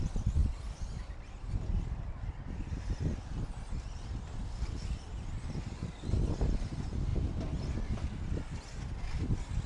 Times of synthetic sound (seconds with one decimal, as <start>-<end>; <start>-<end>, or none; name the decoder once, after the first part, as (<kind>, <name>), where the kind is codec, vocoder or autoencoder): none